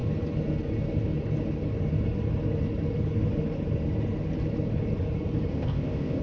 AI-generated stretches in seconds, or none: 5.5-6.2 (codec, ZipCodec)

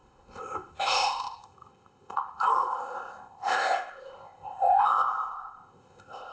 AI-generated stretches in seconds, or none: 0.0-6.3 (codec, ZipCodec)

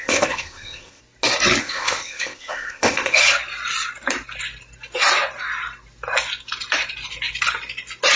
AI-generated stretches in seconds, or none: 0.0-1.0 (codec, ZipCodec); 1.6-3.2

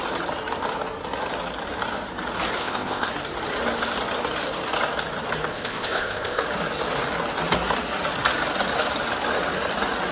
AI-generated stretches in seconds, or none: 2.6-3.1 (codec, ZipCodec); 5.5-6.4

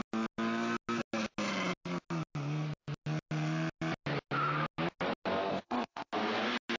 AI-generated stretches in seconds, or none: 5.5-6.1 (codec, ZipCodec)